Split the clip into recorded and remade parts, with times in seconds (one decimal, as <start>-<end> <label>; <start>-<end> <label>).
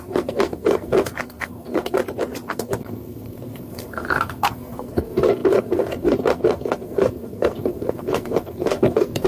0.0-2.0 remade; 2.0-2.5 recorded; 2.5-9.3 remade